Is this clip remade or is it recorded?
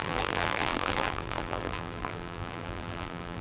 remade